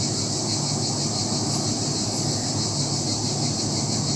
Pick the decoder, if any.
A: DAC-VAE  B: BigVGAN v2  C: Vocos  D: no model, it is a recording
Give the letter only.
D